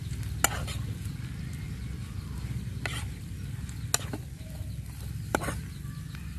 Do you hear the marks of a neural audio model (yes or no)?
no